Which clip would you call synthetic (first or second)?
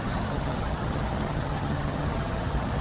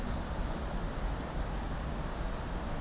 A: first